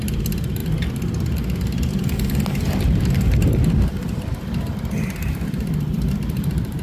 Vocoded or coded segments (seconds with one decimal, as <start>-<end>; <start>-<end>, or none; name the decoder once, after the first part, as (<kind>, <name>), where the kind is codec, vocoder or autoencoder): none